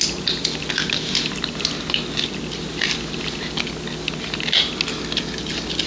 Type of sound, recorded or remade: recorded